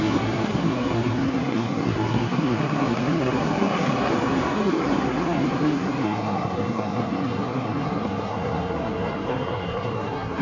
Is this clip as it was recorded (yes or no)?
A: no